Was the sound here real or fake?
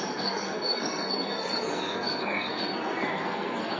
fake